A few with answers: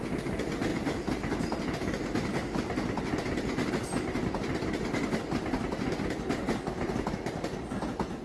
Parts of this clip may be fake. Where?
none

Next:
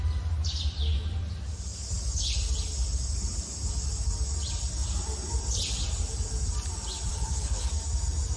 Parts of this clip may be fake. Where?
7.1-7.7 (codec, HILCodec)

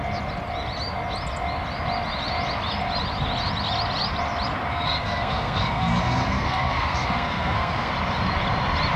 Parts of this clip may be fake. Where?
4.7-7.9 (codec, SNAC)

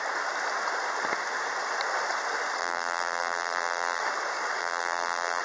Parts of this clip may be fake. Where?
2.6-4.0 (vocoder, BigVGAN v2); 4.6-5.4

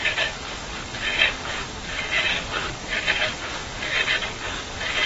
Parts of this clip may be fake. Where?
0.0-5.0 (codec, DAC)

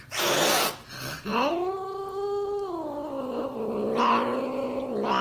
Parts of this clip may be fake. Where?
none

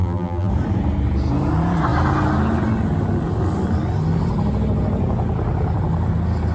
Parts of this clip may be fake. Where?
0.0-0.5 (vocoder, BigVGAN v2)

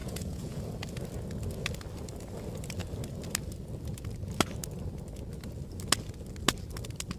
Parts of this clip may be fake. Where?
0.0-0.6 (vocoder, Vocos)